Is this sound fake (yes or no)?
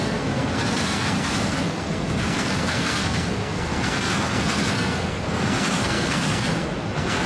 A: yes